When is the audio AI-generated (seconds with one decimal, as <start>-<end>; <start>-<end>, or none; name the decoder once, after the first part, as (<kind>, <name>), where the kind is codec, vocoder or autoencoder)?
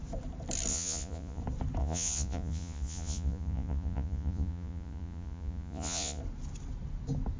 0.7-1.4 (vocoder, Vocos); 1.8-6.2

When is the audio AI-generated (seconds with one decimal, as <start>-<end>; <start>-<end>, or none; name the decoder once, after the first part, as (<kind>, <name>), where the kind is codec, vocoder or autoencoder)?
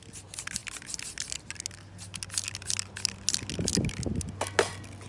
none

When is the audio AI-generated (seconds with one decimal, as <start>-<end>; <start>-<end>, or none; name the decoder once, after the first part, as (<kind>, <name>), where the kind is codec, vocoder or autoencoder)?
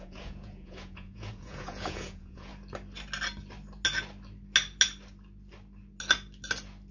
0.0-2.5 (vocoder, Vocos)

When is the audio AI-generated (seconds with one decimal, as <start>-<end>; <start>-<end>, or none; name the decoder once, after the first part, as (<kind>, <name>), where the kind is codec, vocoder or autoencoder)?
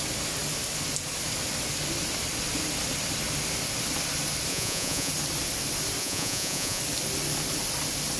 4.5-5.1 (vocoder, Vocos); 6.0-6.8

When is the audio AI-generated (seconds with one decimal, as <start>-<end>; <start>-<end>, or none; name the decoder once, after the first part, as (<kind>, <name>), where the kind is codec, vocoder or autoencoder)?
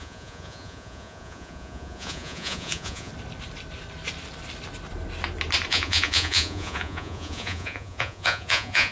0.0-3.1 (vocoder, Vocos); 5.7-8.9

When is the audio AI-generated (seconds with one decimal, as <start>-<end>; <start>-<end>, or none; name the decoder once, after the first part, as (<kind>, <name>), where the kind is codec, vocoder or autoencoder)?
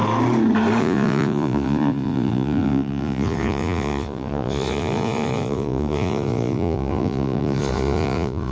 0.8-8.5 (vocoder, Vocos)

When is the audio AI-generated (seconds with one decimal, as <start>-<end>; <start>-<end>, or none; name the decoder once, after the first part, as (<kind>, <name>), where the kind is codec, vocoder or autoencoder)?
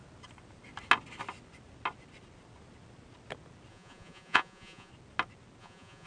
3.7-4.9 (vocoder, Vocos); 5.6-6.1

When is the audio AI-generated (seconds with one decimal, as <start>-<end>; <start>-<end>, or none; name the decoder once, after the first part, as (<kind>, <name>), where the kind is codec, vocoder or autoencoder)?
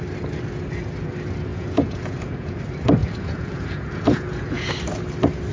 1.5-2.6 (vocoder, Vocos); 3.0-4.7